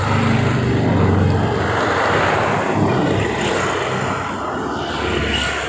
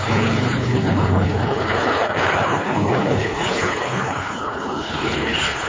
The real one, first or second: first